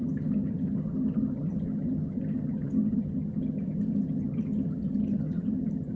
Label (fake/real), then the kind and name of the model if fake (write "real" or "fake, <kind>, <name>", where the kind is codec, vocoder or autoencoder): fake, vocoder, HiFi-GAN